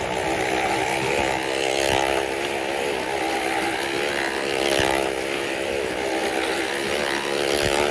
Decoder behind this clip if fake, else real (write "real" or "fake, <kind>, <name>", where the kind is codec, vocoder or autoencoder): real